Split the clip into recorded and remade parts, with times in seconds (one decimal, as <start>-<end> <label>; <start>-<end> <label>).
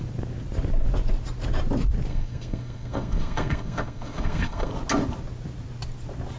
0.0-2.1 recorded; 2.1-4.7 remade; 4.7-6.4 recorded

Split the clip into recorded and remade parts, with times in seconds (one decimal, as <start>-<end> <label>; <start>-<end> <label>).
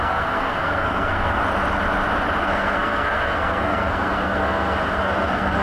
0.0-1.4 remade; 1.4-2.4 recorded; 2.4-5.6 remade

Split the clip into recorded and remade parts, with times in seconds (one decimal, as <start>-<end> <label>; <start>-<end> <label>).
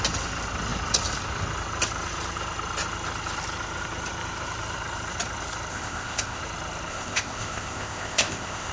0.0-5.7 recorded; 5.7-6.4 remade; 6.4-6.9 recorded; 6.9-8.7 remade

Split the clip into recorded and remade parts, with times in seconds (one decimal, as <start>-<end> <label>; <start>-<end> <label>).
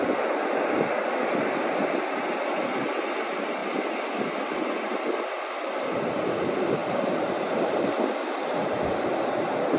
0.0-9.8 recorded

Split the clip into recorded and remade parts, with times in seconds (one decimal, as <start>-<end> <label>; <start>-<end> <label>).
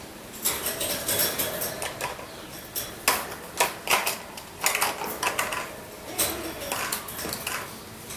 0.0-8.2 recorded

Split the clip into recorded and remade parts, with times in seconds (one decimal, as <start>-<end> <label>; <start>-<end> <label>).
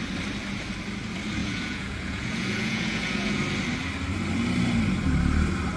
0.0-1.4 recorded; 1.4-3.4 remade; 3.4-5.8 recorded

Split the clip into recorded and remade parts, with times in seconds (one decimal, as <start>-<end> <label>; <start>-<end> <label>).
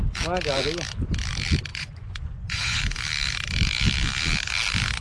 0.0-1.7 recorded; 1.7-2.8 remade; 2.8-5.0 recorded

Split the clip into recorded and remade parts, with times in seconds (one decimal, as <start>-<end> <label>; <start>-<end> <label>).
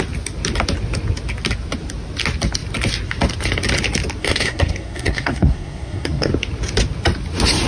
0.0-4.2 recorded; 4.2-6.3 remade; 6.3-7.7 recorded